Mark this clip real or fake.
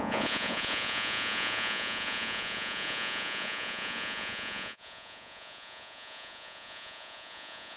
fake